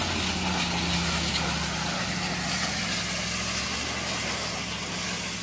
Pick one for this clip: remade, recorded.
recorded